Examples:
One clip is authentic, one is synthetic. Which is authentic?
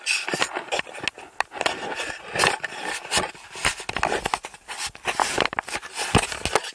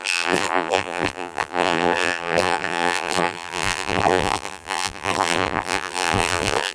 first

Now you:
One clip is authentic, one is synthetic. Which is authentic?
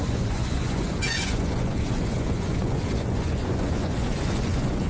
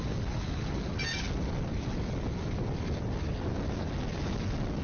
second